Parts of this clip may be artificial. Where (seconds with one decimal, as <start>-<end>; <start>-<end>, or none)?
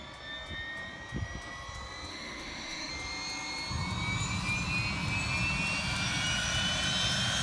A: 2.1-2.9